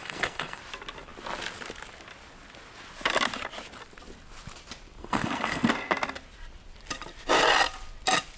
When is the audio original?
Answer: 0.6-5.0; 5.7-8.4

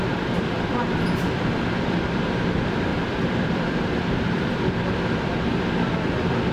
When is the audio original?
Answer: 0.0-2.9; 4.5-6.5

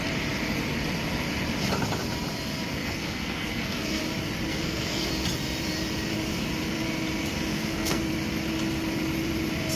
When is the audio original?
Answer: 0.0-2.7; 4.0-4.5; 5.1-7.5; 8.0-9.8

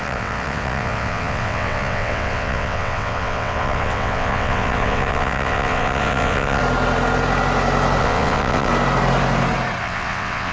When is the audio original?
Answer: 6.6-8.0; 8.7-9.8

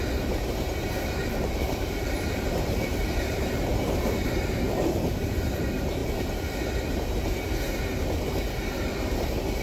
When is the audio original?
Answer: 0.0-1.2; 5.2-9.6

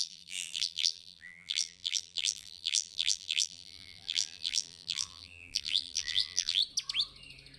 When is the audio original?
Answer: 6.6-7.6